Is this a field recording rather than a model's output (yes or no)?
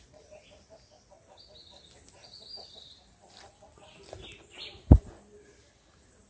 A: yes